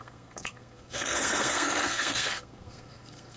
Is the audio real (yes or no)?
no